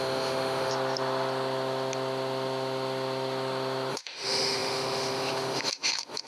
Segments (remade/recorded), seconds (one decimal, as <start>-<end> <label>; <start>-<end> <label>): 0.0-0.7 remade; 0.7-3.9 recorded; 3.9-6.3 remade